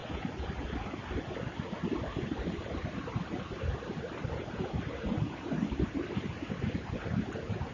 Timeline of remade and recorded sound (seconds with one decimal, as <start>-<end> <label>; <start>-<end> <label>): 0.0-7.7 recorded